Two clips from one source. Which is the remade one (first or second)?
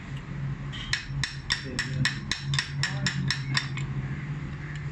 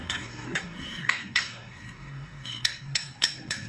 second